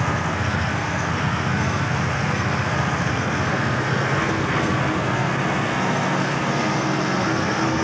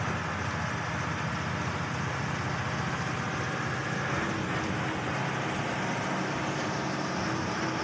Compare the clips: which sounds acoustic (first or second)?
second